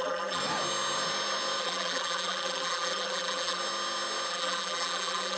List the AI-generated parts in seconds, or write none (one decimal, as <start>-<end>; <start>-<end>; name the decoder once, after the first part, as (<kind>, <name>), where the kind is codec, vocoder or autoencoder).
0.0-0.4 (vocoder, BigVGAN v2); 1.6-3.6; 4.3-5.4